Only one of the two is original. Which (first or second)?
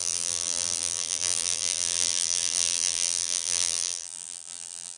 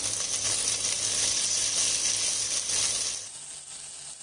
second